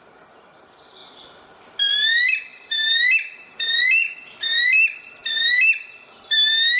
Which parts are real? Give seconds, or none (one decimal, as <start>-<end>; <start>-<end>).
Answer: 0.0-6.8

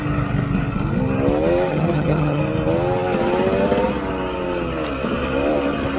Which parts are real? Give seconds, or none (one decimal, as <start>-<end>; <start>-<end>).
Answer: 0.0-1.7; 2.4-6.0